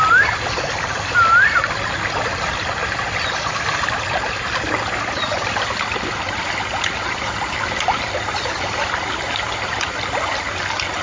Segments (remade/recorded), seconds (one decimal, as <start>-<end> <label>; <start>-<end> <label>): 0.0-11.0 recorded